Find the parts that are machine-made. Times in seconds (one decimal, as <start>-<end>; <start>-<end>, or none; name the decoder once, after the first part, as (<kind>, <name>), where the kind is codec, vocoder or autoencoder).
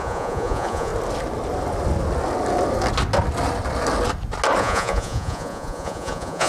0.0-0.9 (vocoder, Vocos); 4.6-6.5